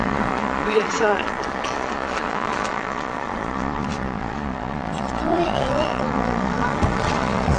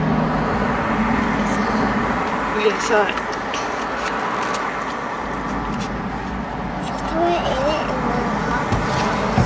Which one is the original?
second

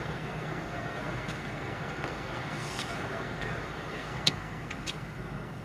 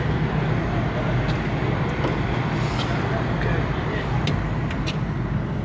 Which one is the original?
second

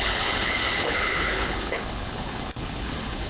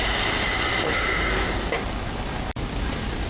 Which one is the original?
second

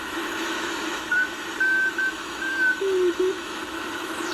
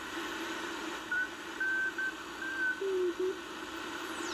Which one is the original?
second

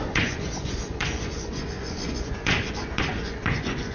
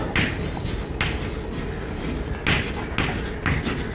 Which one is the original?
second